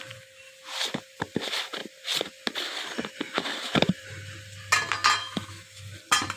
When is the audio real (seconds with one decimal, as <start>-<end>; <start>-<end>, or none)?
0.0-5.2; 5.8-6.4